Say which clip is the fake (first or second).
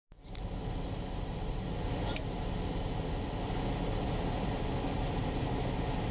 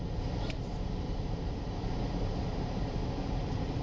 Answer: second